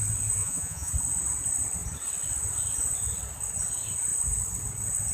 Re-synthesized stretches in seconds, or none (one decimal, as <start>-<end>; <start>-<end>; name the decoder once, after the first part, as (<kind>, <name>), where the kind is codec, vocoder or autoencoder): 0.4-0.9 (vocoder, Vocos)